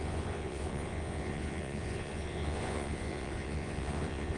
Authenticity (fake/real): fake